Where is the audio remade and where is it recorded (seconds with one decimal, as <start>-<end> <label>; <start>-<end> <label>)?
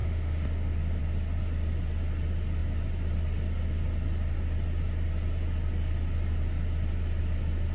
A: 0.0-1.0 remade; 1.0-7.7 recorded